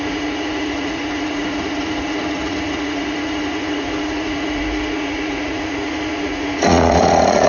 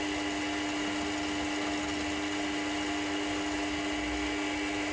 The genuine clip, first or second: second